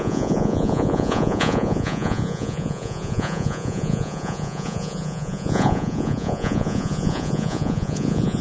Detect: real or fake fake